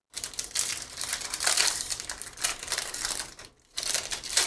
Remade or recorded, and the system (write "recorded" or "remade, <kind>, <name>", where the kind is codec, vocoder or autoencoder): remade, vocoder, BigVGAN v2